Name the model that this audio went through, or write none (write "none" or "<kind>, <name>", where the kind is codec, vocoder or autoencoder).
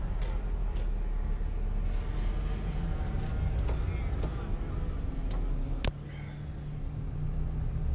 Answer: none